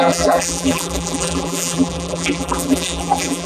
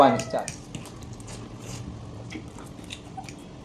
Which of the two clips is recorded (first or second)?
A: second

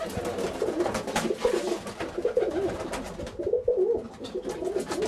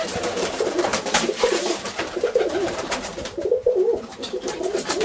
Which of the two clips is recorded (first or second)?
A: first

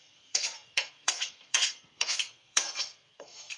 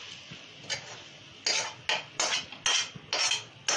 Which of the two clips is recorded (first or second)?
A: second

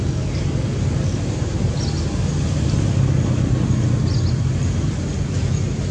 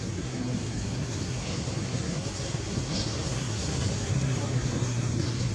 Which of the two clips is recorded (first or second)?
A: first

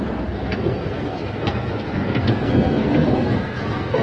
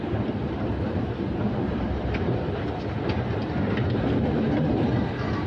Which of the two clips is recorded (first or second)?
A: second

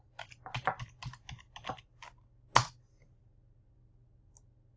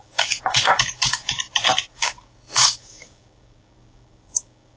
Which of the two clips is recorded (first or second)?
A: first